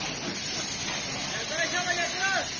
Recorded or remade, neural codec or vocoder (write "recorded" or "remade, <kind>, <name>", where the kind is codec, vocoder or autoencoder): recorded